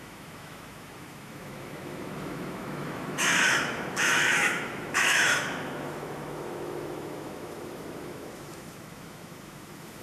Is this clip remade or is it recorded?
remade